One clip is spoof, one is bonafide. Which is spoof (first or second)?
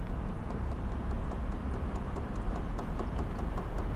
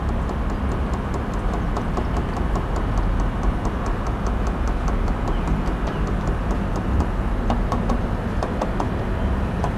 first